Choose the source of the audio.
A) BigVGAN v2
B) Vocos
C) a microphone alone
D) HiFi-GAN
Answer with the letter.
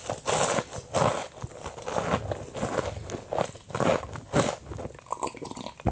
C